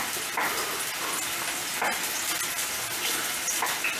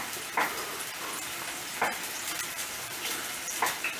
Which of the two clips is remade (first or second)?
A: second